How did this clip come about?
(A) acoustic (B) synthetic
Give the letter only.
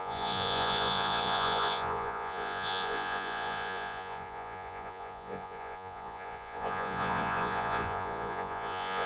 B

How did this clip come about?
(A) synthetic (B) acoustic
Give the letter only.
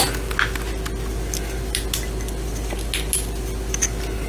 B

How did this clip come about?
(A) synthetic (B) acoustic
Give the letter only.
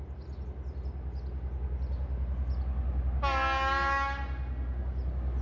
B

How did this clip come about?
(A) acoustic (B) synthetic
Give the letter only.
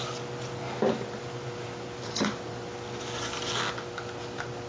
A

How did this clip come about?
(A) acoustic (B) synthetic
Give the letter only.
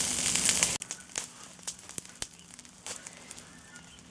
A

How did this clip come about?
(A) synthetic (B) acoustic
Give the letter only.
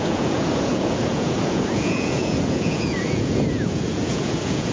A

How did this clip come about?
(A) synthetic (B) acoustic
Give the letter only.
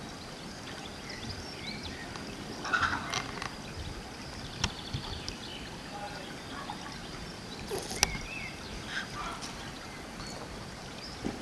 B